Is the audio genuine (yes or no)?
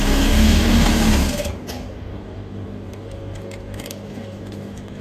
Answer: no